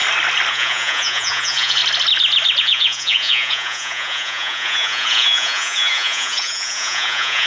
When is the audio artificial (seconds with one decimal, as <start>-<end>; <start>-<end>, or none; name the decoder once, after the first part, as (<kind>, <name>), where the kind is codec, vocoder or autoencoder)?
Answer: 0.5-1.8 (vocoder, Vocos); 2.6-7.5